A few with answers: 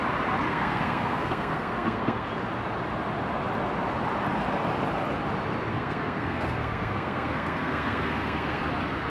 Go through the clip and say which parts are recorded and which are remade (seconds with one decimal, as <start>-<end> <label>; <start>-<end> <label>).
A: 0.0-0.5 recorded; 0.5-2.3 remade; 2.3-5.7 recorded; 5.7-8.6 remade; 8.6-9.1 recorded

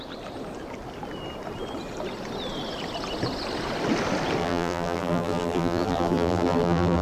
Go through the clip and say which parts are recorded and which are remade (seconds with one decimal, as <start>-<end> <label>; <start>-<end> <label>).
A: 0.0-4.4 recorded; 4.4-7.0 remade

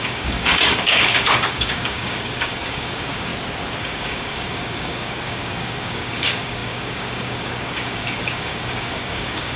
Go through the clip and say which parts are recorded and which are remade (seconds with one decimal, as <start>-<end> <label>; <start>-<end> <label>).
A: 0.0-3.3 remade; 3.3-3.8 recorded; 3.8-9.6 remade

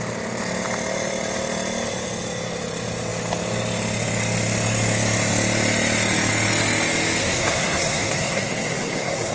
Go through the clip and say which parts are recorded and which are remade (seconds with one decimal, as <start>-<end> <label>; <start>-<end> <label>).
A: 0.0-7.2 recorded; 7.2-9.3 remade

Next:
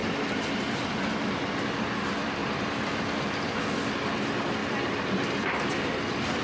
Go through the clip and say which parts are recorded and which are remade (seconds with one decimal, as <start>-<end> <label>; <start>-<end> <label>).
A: 0.0-0.9 remade; 0.9-2.4 recorded; 2.4-3.8 remade; 3.8-4.6 recorded; 4.6-5.3 remade; 5.3-6.4 recorded

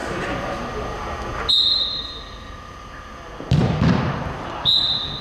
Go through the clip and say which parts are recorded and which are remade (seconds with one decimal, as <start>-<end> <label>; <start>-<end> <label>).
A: 0.0-5.2 recorded

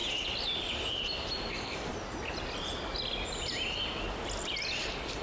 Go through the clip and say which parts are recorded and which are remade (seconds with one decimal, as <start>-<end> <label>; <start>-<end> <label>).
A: 0.0-1.5 recorded; 1.5-1.9 remade; 1.9-5.2 recorded